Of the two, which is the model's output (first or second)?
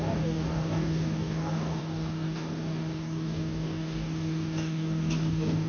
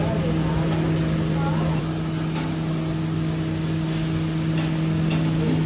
first